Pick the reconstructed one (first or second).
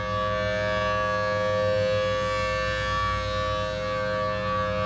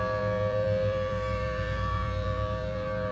second